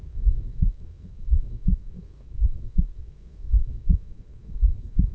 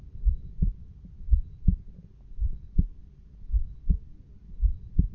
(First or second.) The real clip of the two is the second